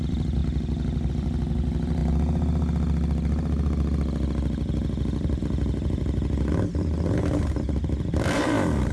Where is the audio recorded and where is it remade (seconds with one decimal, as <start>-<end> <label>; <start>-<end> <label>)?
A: 0.0-0.4 remade; 0.4-1.1 recorded; 1.1-2.0 remade; 2.0-5.4 recorded; 5.4-8.9 remade